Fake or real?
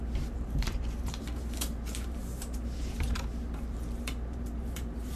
fake